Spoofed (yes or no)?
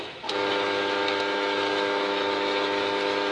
yes